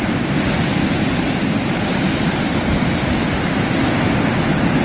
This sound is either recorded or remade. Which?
recorded